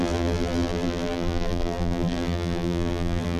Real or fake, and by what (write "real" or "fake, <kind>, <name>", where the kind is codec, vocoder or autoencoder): fake, vocoder, BigVGAN v2